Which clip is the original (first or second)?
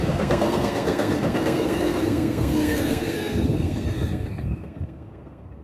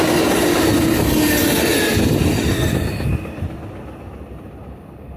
second